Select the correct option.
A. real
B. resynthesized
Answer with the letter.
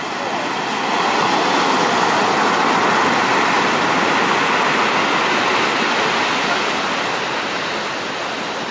A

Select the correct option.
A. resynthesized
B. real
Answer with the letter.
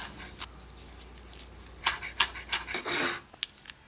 B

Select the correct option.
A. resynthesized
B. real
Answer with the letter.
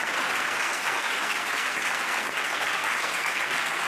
A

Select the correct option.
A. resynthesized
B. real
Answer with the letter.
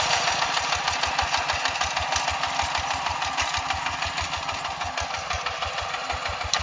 B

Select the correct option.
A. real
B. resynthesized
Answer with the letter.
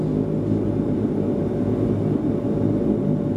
A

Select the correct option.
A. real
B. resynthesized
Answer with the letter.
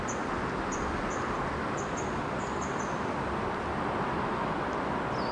A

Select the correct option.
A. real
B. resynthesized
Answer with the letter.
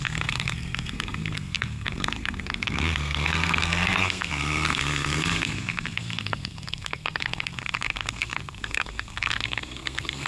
B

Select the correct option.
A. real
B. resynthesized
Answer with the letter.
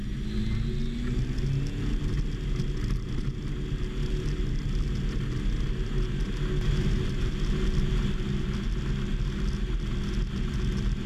A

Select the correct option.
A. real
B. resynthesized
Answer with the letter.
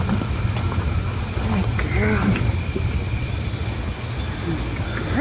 A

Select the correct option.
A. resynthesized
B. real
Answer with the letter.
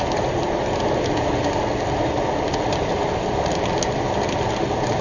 B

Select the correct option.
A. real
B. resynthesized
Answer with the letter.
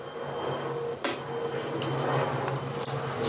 A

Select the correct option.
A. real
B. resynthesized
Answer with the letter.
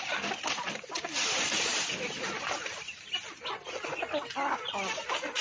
B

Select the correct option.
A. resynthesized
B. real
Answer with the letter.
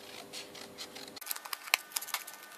B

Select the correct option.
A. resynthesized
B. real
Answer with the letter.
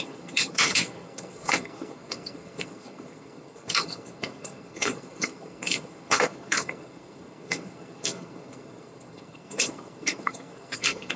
A